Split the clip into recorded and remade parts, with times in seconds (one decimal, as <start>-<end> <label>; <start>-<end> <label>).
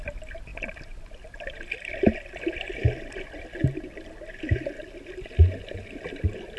0.0-6.6 recorded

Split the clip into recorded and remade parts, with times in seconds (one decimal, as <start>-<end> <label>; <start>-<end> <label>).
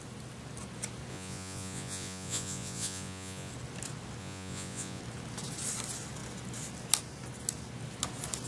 0.0-1.1 recorded; 1.1-3.5 remade; 3.5-4.2 recorded; 4.2-5.0 remade; 5.0-8.5 recorded